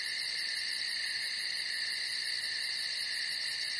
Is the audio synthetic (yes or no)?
no